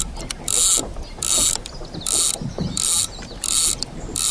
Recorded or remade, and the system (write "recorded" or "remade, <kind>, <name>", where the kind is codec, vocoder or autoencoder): recorded